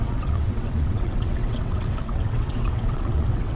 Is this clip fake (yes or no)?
yes